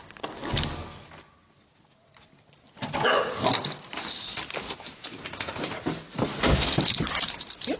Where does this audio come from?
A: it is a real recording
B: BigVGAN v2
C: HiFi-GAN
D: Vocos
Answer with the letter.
A